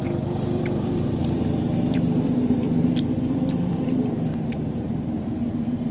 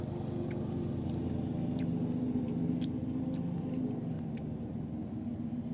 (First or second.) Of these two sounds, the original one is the second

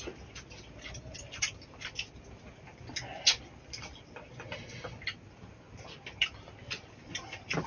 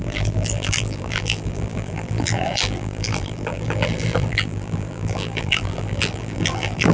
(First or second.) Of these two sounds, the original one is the first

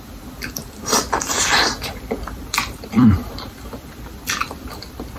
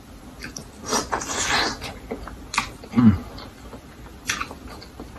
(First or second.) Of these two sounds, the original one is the second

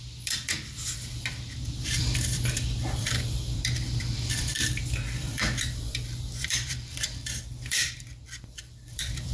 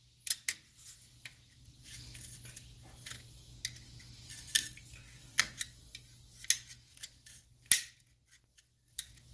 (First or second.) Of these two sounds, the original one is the second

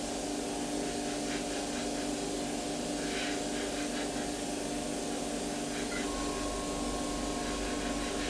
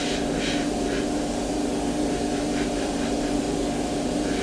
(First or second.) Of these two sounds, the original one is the first